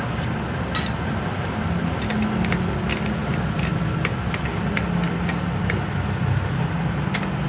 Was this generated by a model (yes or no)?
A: no